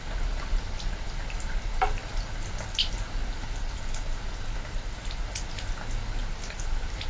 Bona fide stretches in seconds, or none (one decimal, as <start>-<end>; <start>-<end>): 0.0-7.1